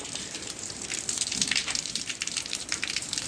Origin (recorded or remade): remade